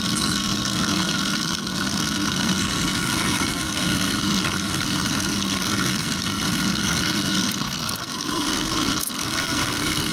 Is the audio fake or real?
fake